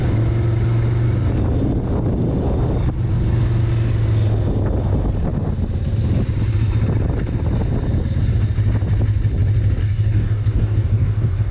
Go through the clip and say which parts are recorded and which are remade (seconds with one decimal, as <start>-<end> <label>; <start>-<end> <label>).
0.0-9.8 recorded; 9.8-11.5 remade